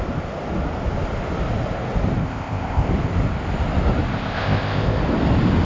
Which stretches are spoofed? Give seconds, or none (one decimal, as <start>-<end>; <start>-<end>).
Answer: 2.2-2.9; 4.1-5.0